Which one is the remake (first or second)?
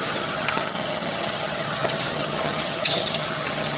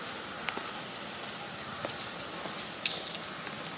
first